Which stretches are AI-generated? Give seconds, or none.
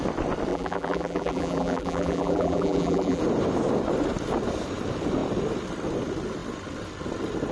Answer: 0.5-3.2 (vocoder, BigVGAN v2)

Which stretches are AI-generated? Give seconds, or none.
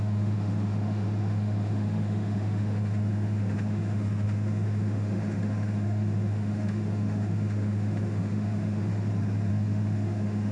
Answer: 0.0-8.9 (autoencoder, DAC-VAE); 9.5-10.5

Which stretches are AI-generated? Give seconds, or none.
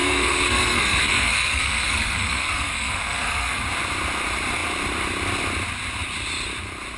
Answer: 0.0-3.6 (codec, SNAC)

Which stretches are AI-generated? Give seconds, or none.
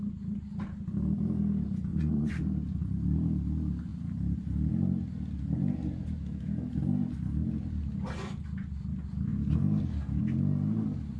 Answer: 1.9-2.4 (vocoder, Vocos)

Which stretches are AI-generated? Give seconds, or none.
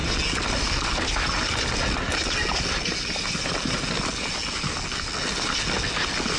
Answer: none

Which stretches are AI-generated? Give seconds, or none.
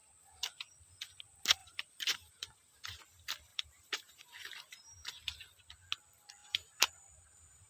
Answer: 1.6-3.0 (vocoder, BigVGAN v2); 3.5-4.2; 6.4-7.7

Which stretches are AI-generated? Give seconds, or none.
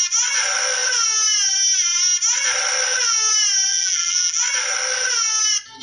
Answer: 3.7-4.4 (vocoder, BigVGAN v2)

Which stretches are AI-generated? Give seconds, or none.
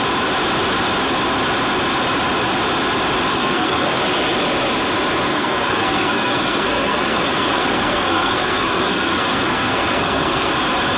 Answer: 3.3-4.0 (codec, SNAC); 5.3-10.5